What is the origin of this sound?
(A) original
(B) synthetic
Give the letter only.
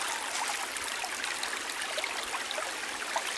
A